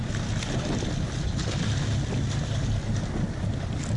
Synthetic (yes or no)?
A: no